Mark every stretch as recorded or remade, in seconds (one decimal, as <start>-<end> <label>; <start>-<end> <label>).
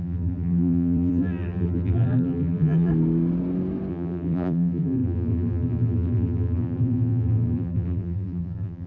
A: 0.0-2.9 remade; 2.9-3.9 recorded; 3.9-8.9 remade